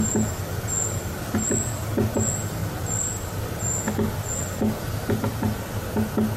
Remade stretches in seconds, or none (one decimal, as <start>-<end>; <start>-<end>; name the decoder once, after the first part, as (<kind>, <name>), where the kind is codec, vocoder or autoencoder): 2.6-3.9 (vocoder, BigVGAN v2); 5.3-5.8